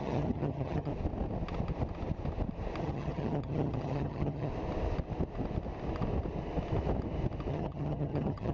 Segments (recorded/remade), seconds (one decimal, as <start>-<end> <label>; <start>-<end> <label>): 0.0-0.9 remade; 0.9-2.8 recorded; 2.8-4.5 remade; 4.5-7.5 recorded; 7.5-8.5 remade